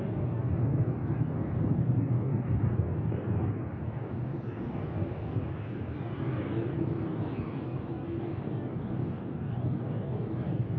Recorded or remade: remade